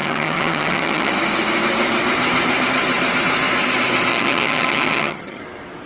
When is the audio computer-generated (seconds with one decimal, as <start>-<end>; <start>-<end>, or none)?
0.0-1.1; 4.1-5.4